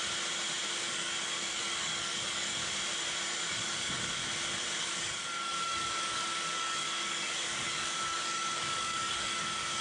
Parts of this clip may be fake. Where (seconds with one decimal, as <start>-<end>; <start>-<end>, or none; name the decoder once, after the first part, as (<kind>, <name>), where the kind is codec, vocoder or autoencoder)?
0.7-2.6 (codec, DAC); 3.5-4.2; 4.8-9.8